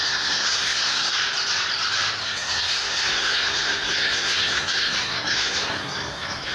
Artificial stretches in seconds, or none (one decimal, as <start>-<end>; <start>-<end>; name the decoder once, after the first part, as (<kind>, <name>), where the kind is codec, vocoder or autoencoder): 0.0-1.2 (codec, SNAC); 2.2-6.5